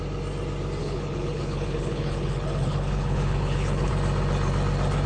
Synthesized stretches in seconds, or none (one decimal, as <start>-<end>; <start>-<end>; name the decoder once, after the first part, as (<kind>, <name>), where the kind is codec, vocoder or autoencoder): 0.8-3.9 (codec, HILCodec)